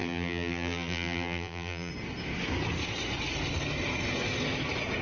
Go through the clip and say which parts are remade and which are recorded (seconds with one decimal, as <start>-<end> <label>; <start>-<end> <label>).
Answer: 0.0-1.9 remade; 1.9-5.0 recorded